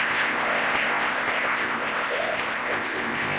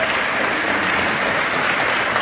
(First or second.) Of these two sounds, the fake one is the first